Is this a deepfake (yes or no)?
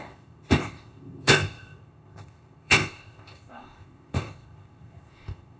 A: yes